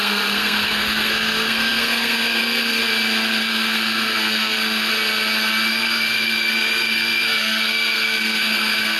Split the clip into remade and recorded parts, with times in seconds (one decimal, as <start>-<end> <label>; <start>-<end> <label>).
0.0-2.8 remade; 2.8-3.4 recorded; 3.4-4.9 remade; 4.9-5.7 recorded; 5.7-9.0 remade